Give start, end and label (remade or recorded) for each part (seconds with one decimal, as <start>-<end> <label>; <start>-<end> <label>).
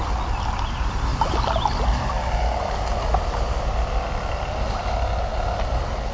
0.0-6.1 recorded